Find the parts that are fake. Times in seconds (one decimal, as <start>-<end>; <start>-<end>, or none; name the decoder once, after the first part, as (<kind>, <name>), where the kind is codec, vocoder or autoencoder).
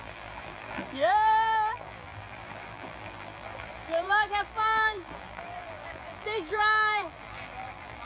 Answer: 0.0-8.1 (vocoder, BigVGAN v2)